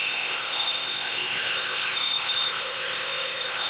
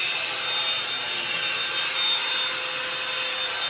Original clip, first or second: second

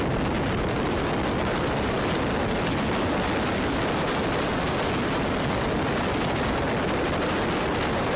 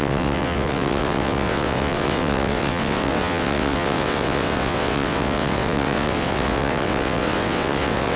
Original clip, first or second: first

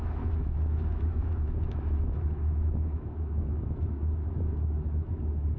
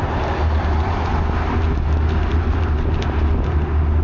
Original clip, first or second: second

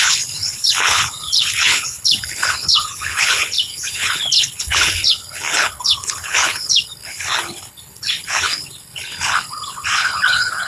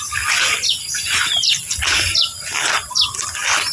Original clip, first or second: second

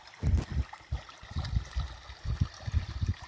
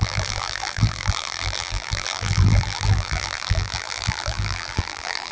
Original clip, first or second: first